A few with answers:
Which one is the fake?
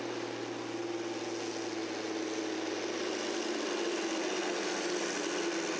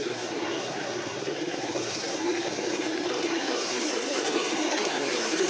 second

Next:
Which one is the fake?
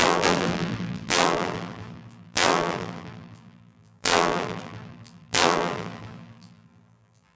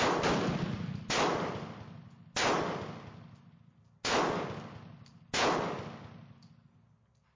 first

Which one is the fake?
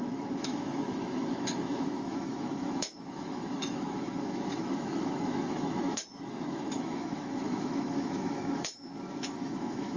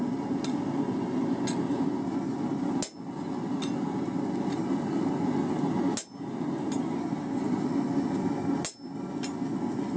first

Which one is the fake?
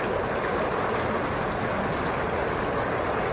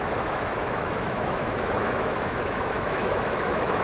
second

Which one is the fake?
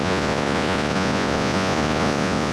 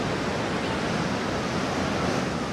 first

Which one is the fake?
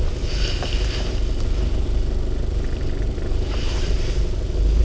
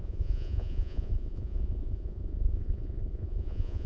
second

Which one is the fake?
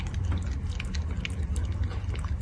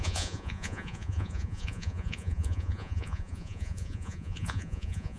second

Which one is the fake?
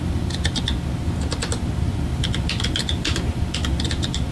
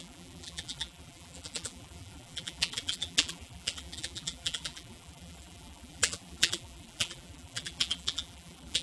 second